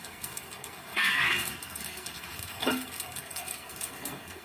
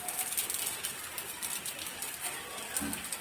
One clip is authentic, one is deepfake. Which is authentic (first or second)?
second